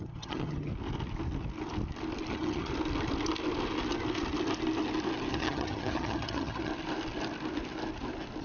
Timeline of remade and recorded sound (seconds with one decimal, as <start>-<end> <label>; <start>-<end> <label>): 0.0-0.7 remade; 0.7-2.3 recorded; 2.3-2.7 remade; 2.7-5.3 recorded; 5.3-6.7 remade; 6.7-8.4 recorded